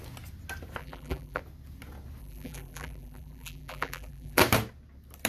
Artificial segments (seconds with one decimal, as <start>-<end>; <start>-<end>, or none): 0.8-1.4; 2.2-4.4